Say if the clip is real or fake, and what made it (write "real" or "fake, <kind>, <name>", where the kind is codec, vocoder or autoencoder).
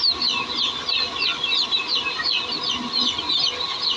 real